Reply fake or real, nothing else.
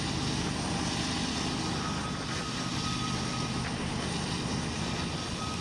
real